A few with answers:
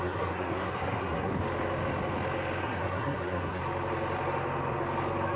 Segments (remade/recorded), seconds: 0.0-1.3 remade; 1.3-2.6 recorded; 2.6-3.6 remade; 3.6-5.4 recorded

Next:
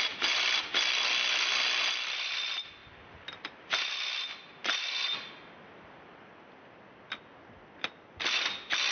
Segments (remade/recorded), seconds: 0.0-8.9 recorded

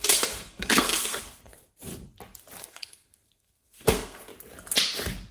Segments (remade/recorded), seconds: 0.0-1.9 remade; 1.9-2.6 recorded; 2.6-4.3 remade; 4.3-5.3 recorded

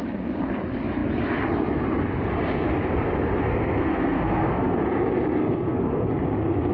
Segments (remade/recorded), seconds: 0.0-3.4 recorded; 3.4-4.8 remade; 4.8-5.4 recorded; 5.4-6.1 remade; 6.1-6.7 recorded

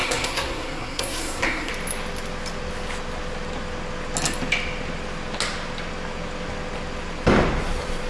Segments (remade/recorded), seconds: 0.0-1.7 remade; 1.7-8.1 recorded

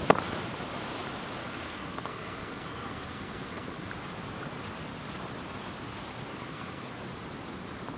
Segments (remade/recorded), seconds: 0.0-1.4 recorded; 1.4-3.9 remade; 3.9-6.3 recorded; 6.3-6.9 remade; 6.9-8.0 recorded